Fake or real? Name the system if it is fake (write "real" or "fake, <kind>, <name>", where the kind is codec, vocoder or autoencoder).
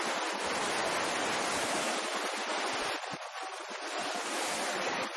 real